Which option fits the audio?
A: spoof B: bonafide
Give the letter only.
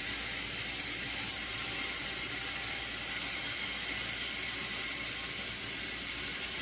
A